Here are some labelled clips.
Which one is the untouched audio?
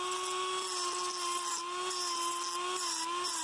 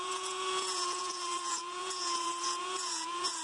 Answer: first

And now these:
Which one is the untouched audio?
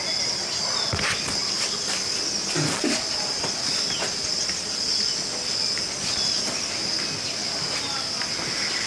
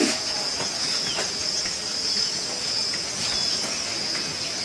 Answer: first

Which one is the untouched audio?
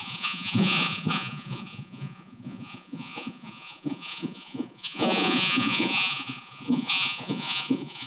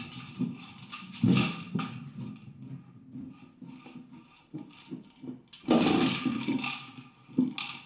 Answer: second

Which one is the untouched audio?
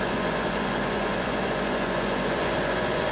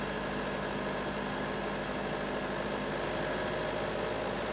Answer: second